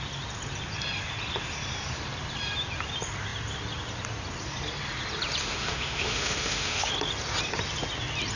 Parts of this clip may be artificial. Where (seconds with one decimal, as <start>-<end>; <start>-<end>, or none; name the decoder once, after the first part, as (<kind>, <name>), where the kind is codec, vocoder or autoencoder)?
5.4-6.9 (autoencoder, DAC-VAE)